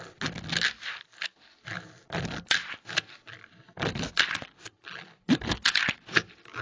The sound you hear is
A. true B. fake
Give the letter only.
A